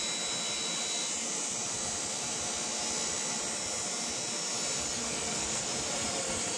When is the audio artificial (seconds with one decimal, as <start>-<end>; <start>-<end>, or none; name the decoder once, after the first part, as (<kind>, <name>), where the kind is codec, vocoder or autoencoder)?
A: 5.0-5.7 (codec, SNAC)